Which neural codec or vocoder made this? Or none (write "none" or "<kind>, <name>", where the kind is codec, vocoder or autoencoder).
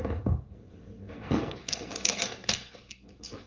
codec, SNAC